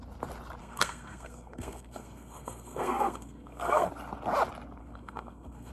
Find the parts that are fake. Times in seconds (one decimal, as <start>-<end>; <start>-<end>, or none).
0.6-3.9; 4.8-5.7